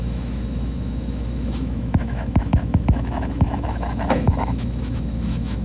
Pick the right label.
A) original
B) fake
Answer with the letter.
B